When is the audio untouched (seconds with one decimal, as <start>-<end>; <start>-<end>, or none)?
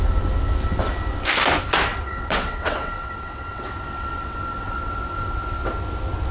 0.0-1.9; 5.7-6.3